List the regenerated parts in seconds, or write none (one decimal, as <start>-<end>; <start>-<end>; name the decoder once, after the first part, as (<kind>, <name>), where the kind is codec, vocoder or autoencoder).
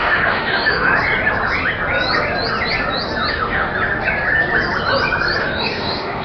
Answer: 0.0-0.9 (autoencoder, DAC-VAE); 3.3-3.7; 5.4-6.2